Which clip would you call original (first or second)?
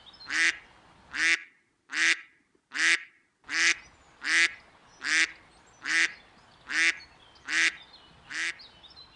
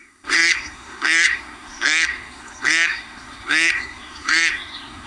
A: first